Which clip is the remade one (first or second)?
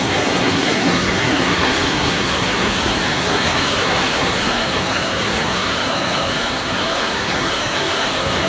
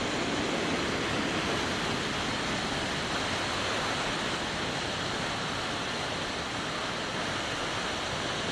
first